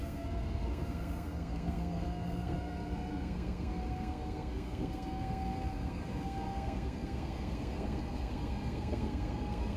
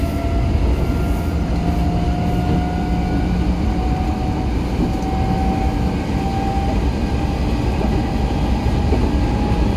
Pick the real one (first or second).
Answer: second